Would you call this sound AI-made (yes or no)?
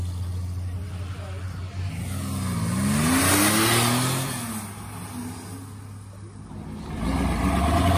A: no